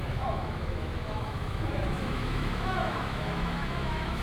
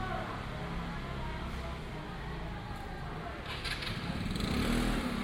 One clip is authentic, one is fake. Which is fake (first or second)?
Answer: first